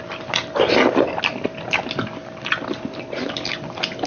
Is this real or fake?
real